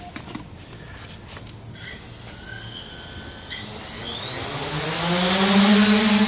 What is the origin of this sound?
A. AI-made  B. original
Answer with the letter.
B